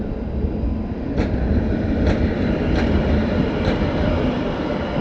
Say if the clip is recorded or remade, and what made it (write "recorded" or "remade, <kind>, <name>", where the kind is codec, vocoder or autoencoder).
recorded